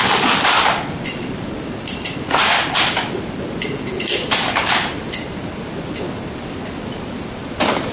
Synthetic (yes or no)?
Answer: no